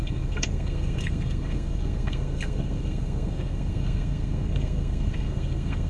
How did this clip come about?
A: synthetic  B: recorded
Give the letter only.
A